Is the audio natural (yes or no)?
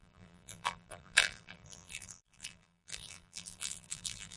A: no